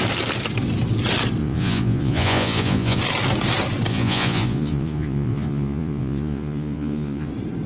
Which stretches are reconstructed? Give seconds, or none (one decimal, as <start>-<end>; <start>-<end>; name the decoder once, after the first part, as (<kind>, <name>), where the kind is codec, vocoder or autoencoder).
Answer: 1.4-3.0 (vocoder, Vocos); 3.9-7.3

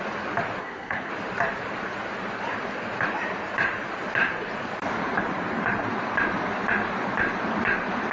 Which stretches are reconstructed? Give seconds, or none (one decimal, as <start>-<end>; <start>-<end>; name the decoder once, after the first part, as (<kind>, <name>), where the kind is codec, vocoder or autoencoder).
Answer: 0.6-1.1 (codec, SNAC)

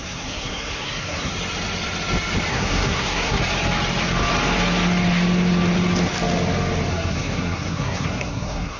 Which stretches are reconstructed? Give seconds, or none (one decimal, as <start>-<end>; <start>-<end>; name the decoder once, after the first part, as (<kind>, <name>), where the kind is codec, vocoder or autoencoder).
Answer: 0.0-1.3 (codec, SNAC); 2.5-3.4; 6.9-8.8

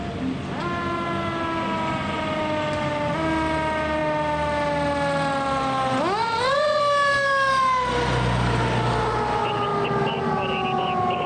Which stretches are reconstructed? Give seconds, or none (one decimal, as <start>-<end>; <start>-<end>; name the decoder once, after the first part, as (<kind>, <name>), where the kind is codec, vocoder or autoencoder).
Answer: 6.2-6.8 (vocoder, WaveNeXt)